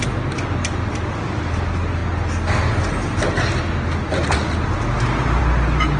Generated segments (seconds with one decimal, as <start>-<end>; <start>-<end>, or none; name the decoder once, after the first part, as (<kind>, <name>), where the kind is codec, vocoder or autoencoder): none